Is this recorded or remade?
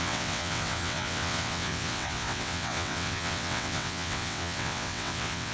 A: remade